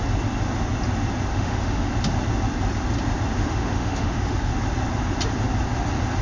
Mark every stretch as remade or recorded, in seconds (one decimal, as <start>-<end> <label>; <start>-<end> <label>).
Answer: 0.0-1.3 recorded; 1.3-1.9 remade; 1.9-3.4 recorded; 3.4-4.5 remade; 4.5-6.2 recorded